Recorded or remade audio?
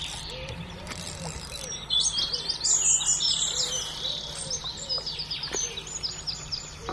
recorded